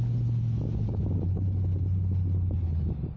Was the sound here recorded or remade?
recorded